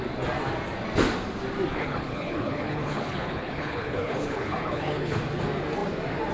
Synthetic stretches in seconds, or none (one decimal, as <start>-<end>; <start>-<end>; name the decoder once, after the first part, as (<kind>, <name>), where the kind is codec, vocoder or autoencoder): 1.7-5.2 (codec, HILCodec)